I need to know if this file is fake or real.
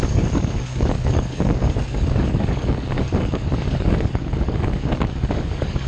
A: fake